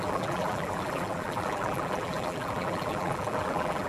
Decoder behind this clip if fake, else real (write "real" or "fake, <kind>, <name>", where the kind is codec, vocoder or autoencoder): fake, vocoder, BigVGAN v2